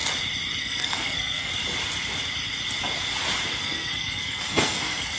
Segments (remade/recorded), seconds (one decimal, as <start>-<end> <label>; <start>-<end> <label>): 0.0-0.6 recorded; 0.6-1.5 remade; 1.5-3.6 recorded; 3.6-5.2 remade